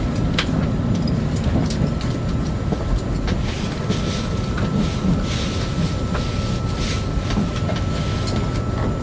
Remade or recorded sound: recorded